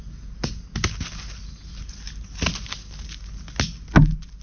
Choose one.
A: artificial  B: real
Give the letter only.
B